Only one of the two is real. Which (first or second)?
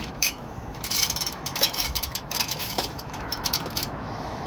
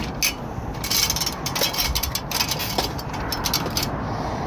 second